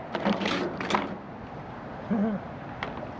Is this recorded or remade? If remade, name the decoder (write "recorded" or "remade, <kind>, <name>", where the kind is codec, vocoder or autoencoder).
recorded